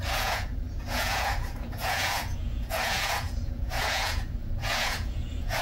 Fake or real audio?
fake